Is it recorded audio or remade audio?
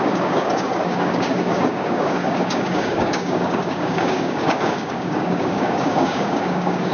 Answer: remade